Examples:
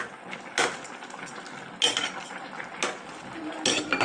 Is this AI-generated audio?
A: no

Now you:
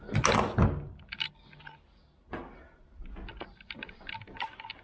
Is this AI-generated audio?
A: no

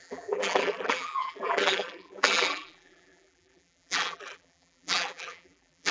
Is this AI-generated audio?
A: yes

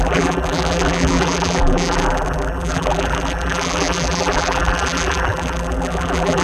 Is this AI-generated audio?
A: yes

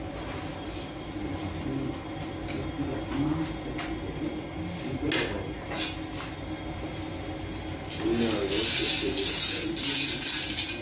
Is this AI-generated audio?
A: no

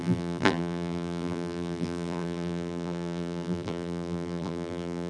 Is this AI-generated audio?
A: yes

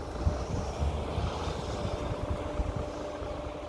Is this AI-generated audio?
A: no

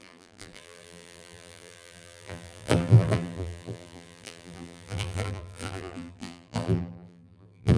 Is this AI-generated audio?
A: yes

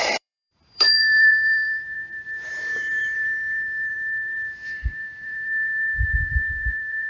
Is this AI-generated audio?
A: yes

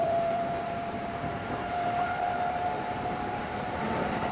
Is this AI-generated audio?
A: yes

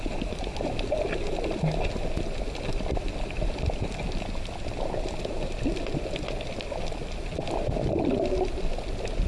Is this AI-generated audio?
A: no